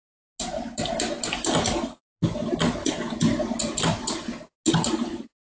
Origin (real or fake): real